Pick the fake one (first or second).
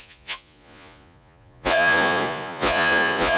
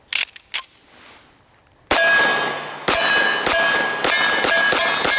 first